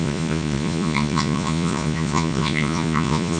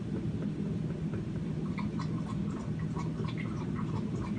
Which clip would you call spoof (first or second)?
first